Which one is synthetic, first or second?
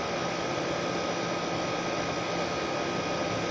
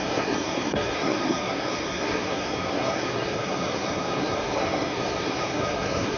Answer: second